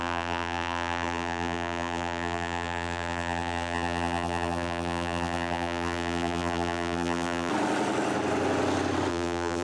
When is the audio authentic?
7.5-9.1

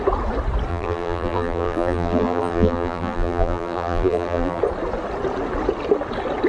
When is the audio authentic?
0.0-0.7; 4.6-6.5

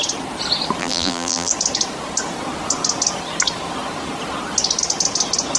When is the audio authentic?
0.0-0.8; 1.5-5.6

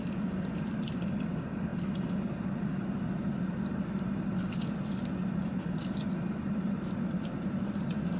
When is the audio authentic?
none

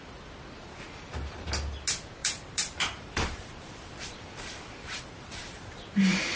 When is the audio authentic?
0.0-2.2; 5.7-6.4

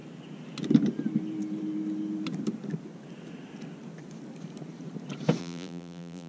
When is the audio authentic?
0.0-5.4